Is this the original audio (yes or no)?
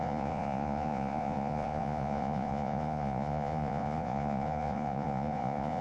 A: no